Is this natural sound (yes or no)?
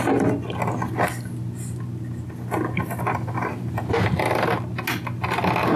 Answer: yes